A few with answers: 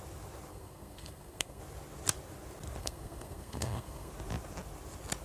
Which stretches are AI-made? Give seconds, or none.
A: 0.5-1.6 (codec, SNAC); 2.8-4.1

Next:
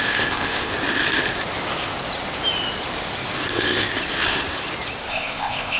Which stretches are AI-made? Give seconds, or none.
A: 0.0-0.7 (codec, ZipCodec); 3.5-3.9; 5.1-5.8

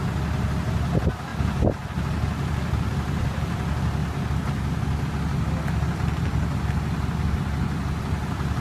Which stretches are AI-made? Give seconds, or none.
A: none